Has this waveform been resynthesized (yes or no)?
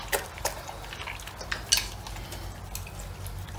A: no